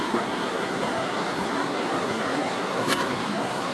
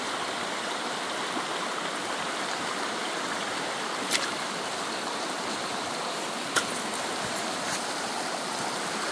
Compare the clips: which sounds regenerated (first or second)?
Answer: first